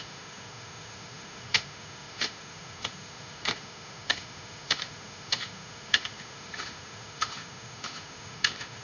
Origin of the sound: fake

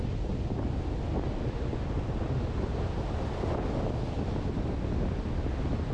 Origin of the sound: real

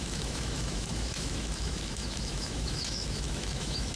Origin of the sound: fake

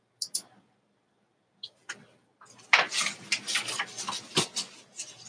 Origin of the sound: real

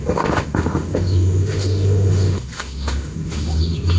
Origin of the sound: fake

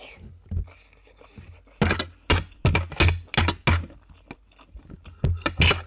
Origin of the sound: real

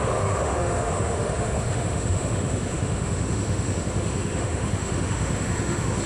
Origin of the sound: fake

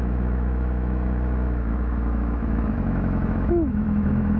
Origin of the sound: fake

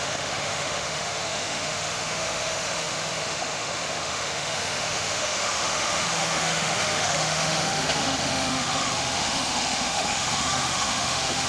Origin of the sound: fake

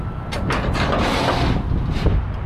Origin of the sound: real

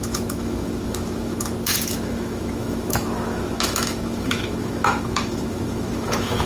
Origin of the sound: fake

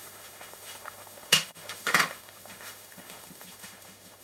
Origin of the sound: fake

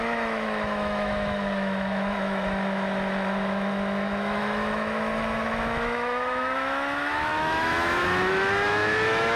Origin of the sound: fake